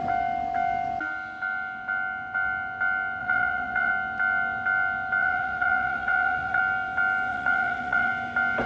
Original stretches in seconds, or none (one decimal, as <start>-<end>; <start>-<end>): 0.0-3.2; 3.9-5.2; 6.6-7.3; 8.1-8.7